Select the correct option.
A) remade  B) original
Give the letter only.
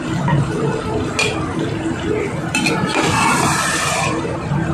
B